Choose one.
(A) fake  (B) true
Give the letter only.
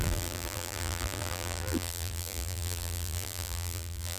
A